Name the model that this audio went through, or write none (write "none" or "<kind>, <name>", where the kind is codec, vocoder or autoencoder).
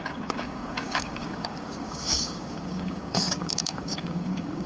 codec, DAC